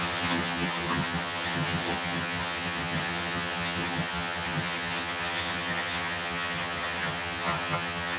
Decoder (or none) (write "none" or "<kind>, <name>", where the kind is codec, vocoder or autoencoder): vocoder, HiFi-GAN